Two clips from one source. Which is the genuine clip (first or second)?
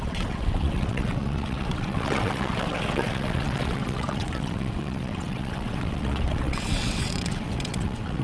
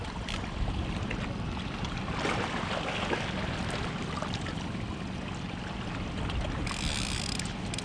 second